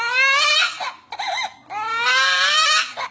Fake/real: real